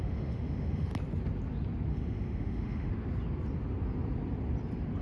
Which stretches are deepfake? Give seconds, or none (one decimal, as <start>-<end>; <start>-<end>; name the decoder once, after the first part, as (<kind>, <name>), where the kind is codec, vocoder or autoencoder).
0.0-0.9 (autoencoder, DAC-VAE); 1.9-2.9